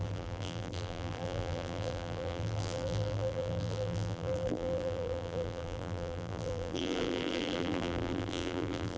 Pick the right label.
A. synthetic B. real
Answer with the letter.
A